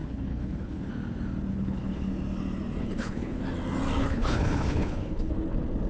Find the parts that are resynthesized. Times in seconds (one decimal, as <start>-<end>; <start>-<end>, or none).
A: 0.0-0.9; 1.5-2.1; 2.8-3.4; 4.0-5.3